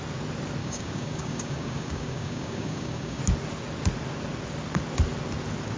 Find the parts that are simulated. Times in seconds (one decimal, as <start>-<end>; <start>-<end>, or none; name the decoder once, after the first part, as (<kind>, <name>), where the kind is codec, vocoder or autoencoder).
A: 0.6-3.2 (codec, DAC)